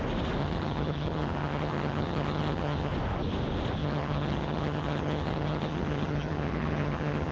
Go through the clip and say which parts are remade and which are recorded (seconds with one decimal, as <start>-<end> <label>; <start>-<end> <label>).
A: 0.0-0.4 recorded; 0.4-2.9 remade; 2.9-3.8 recorded; 3.8-7.3 remade